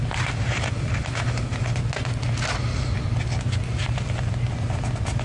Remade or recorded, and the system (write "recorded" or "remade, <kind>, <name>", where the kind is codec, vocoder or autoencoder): recorded